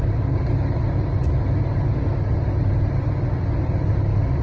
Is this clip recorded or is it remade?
recorded